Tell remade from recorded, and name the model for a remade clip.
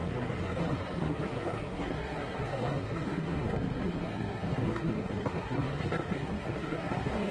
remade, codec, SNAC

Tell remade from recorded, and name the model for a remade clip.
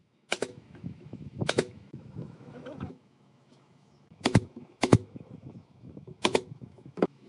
remade, autoencoder, DAC-VAE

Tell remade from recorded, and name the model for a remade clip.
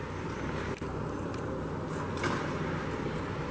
recorded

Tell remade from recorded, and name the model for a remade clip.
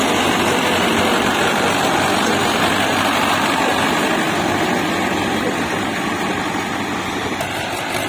recorded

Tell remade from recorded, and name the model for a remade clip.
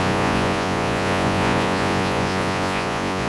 remade, vocoder, Vocos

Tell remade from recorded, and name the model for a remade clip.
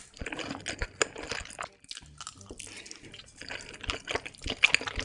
recorded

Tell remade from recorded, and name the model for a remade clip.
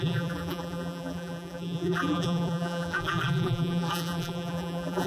remade, vocoder, BigVGAN v2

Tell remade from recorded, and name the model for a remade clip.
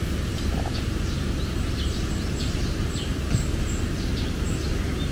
recorded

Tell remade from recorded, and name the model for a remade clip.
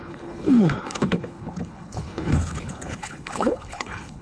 remade, codec, HILCodec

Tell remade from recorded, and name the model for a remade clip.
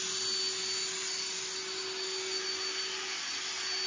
recorded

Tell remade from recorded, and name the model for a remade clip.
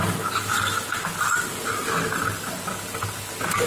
recorded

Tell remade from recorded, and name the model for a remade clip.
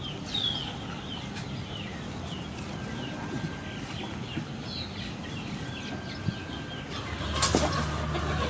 recorded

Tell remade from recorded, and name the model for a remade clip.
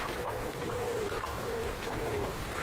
remade, codec, DAC